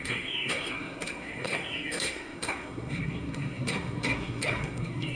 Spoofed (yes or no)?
yes